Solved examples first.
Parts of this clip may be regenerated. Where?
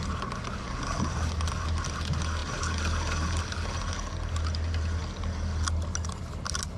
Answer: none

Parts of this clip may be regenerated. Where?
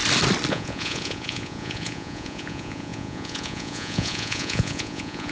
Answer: 0.5-5.3 (vocoder, Vocos)